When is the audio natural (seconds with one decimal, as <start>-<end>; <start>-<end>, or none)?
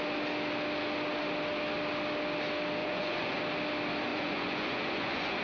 0.0-2.8; 3.4-4.1